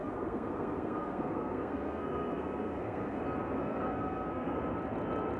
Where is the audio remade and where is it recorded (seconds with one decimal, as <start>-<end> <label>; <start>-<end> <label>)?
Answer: 0.0-3.2 remade; 3.2-3.6 recorded; 3.6-4.6 remade; 4.6-5.4 recorded